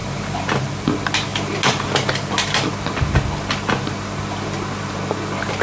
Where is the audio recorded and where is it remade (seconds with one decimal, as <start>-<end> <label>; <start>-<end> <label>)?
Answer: 0.0-0.7 remade; 0.7-1.3 recorded; 1.3-2.1 remade; 2.1-5.6 recorded